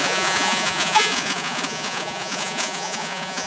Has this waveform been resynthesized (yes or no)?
yes